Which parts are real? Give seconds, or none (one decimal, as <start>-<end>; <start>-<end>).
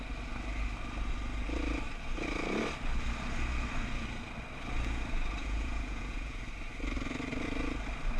0.0-5.4; 6.4-8.2